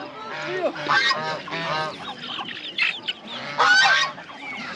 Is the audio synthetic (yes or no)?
no